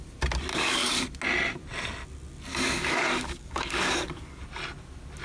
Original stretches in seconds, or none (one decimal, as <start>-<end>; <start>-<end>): 0.0-0.5; 1.0-2.5; 4.4-5.2